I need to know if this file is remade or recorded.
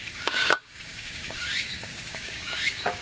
remade